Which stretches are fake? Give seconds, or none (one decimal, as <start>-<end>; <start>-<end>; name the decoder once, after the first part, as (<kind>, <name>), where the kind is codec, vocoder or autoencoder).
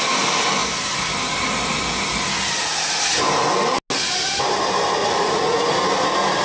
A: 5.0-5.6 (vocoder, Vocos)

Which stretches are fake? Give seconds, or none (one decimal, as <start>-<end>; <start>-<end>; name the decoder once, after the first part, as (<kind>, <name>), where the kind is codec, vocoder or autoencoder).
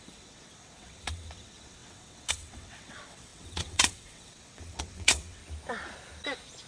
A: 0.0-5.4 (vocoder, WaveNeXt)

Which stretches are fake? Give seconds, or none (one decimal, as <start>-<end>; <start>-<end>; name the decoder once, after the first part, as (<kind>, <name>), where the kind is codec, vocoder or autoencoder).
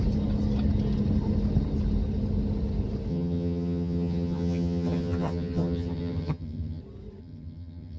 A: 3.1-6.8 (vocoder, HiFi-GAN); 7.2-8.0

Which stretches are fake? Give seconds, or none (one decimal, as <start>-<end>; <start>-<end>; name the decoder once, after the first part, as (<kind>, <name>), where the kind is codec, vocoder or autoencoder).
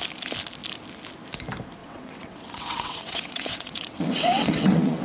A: 1.8-5.0 (vocoder, WaveNeXt)